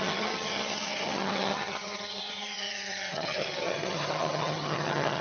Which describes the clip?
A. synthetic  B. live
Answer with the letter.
A